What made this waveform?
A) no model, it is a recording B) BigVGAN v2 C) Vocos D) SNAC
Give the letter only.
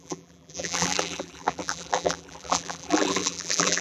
B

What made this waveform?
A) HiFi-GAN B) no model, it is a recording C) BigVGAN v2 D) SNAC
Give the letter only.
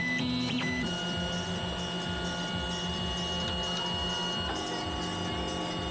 B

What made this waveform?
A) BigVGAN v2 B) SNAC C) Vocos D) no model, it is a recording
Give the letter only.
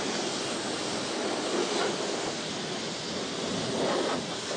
D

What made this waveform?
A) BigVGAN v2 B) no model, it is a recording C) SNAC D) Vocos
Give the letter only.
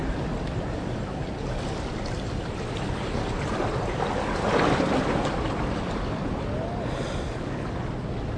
B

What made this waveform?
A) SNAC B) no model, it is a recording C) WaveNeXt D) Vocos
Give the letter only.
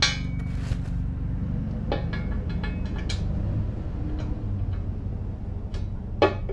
B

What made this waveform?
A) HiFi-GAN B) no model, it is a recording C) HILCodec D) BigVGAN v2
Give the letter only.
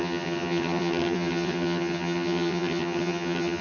A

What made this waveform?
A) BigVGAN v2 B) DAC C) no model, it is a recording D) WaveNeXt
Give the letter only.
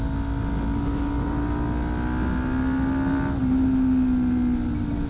C